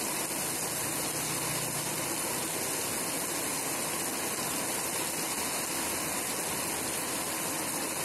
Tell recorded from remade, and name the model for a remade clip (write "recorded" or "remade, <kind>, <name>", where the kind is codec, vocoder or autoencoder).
recorded